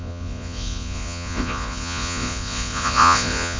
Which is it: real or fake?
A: fake